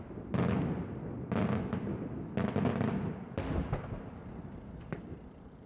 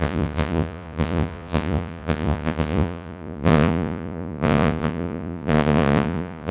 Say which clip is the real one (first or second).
first